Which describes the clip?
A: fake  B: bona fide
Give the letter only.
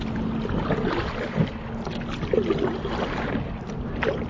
B